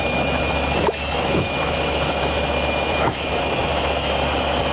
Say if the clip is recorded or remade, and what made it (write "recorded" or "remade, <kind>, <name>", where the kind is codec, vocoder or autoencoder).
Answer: remade, autoencoder, DAC-VAE